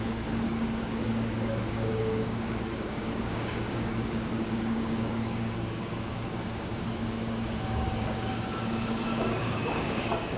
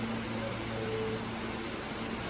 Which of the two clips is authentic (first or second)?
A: second